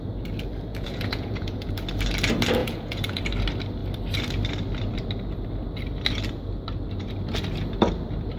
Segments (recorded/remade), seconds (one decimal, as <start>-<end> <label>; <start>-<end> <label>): 0.0-0.7 recorded; 0.7-1.7 remade; 1.7-2.6 recorded; 2.6-3.2 remade; 3.2-8.4 recorded